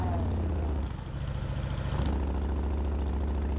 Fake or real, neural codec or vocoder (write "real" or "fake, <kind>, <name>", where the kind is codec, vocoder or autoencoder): real